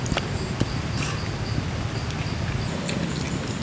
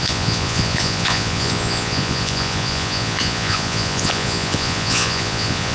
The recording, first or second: first